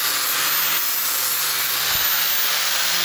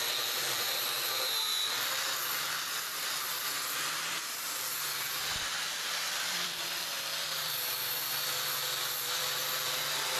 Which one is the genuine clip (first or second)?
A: first